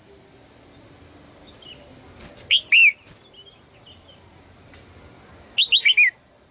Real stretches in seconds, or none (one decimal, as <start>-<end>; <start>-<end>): 0.0-6.5